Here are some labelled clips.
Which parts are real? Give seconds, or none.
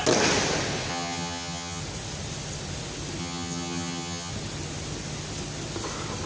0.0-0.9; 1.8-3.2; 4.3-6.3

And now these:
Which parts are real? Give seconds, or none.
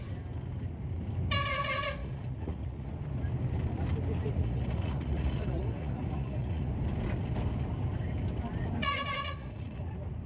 0.0-2.0; 2.9-4.2; 6.7-8.8; 9.9-10.3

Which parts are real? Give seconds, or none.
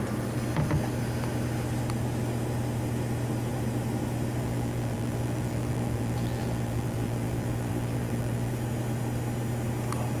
0.0-4.4; 8.5-10.2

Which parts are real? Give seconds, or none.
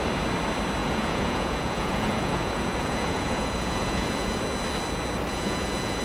0.0-0.8; 4.4-5.3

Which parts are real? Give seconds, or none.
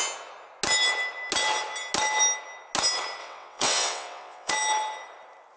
0.0-3.2; 4.5-5.6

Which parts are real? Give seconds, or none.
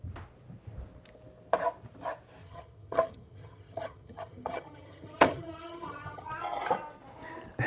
0.0-2.4; 6.3-7.7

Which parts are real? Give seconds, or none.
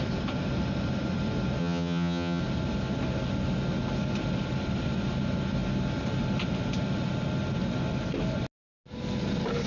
0.0-1.6; 2.4-9.7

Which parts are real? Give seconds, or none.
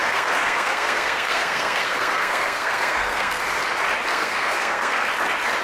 3.4-4.1; 5.1-5.6